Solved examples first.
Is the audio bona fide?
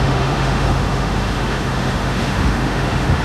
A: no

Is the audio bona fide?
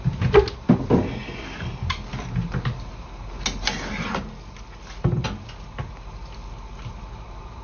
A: yes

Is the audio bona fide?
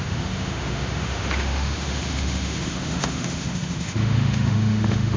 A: no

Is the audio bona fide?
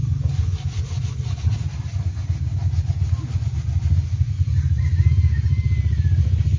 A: yes